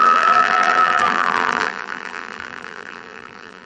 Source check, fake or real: fake